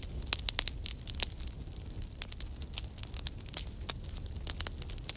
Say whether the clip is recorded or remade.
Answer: recorded